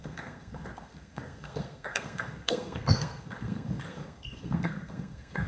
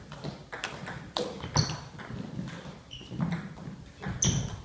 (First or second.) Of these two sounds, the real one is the second